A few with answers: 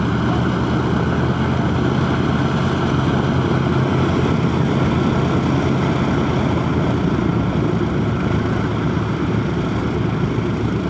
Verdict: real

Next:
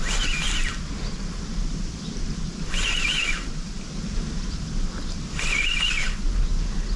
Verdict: real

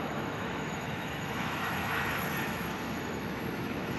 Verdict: fake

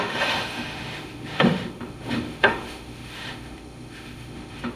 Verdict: fake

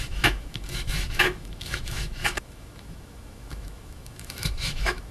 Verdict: fake